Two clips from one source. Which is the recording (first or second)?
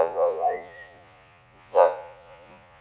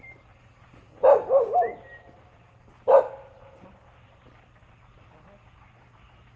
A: second